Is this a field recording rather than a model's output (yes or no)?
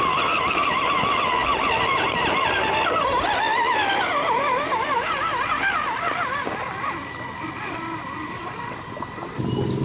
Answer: yes